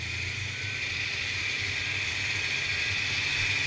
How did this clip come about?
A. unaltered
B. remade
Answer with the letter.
A